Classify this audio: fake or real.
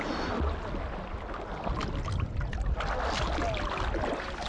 real